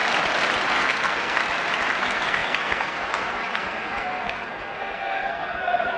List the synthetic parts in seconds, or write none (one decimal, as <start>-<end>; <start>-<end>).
0.7-1.4; 2.0-6.0